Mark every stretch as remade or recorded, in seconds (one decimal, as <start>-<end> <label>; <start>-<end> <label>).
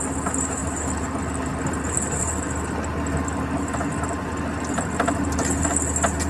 0.0-6.3 recorded